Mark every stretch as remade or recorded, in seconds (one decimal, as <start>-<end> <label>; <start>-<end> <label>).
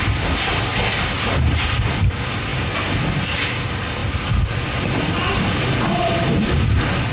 0.0-7.1 recorded